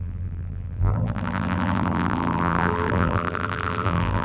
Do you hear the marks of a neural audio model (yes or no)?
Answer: yes